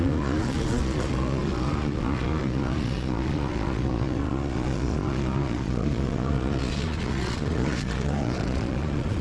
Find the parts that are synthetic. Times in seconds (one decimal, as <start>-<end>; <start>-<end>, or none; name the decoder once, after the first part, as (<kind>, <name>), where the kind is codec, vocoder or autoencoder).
0.0-9.2 (vocoder, Vocos)